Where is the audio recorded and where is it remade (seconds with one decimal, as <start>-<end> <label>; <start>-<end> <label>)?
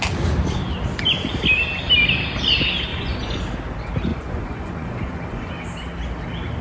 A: 0.0-2.9 recorded; 2.9-3.4 remade; 3.4-4.1 recorded; 4.1-5.5 remade; 5.5-6.6 recorded